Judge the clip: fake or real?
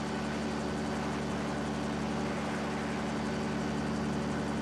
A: real